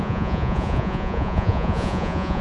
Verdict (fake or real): fake